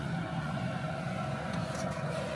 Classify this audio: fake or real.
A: fake